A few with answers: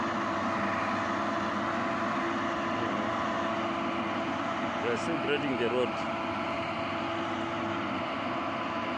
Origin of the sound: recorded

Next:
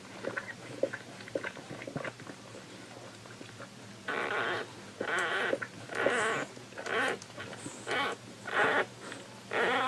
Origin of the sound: recorded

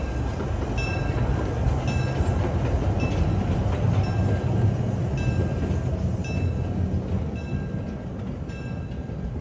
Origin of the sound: recorded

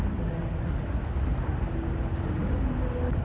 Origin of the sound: recorded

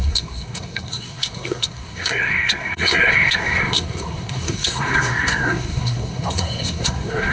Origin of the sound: remade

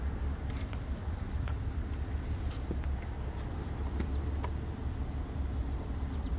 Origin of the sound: recorded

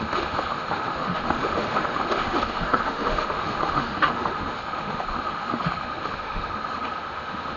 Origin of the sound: remade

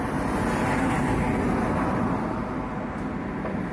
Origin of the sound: recorded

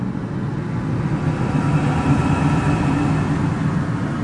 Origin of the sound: recorded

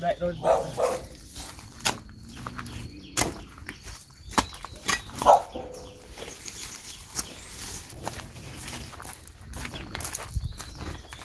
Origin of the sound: recorded